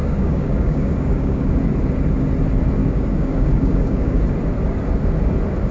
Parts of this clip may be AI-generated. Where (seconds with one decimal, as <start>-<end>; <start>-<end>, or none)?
0.0-1.5; 2.8-4.2